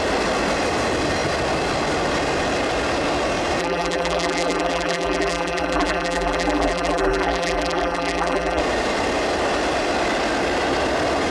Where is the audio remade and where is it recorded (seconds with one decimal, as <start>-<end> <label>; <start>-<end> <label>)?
0.0-3.6 recorded; 3.6-8.6 remade; 8.6-11.3 recorded